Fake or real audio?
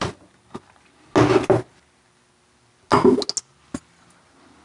real